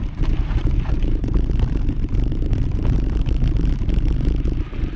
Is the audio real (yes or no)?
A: yes